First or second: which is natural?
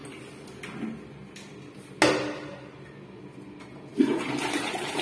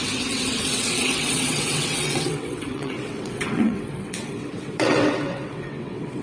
first